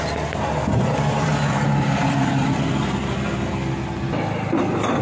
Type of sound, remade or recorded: recorded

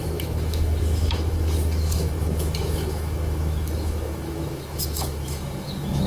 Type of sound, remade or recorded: remade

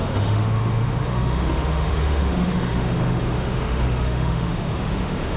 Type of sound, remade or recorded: remade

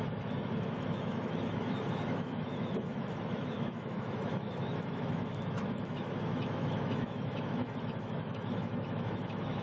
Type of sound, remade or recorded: remade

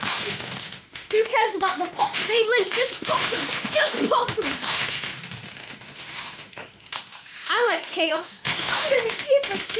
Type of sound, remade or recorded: remade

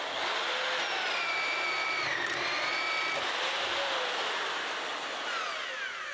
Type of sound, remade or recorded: recorded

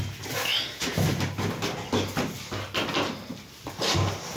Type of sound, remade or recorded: recorded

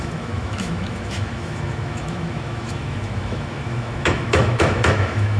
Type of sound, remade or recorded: remade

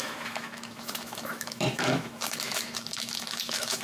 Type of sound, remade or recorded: remade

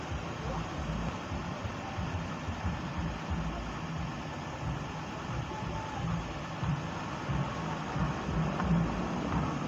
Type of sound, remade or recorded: recorded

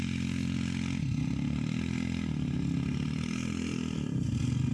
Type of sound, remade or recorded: recorded